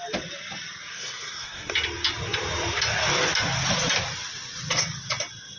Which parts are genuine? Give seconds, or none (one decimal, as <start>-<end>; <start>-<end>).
0.0-0.9; 1.7-5.6